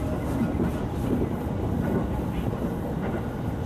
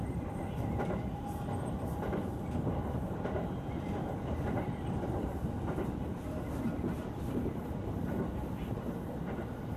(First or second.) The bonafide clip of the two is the first